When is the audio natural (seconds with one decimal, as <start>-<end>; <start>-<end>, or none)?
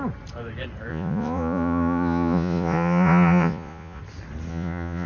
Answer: 0.0-0.9; 4.0-4.5